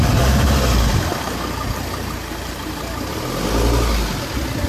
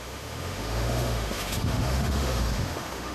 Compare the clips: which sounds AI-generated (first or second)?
second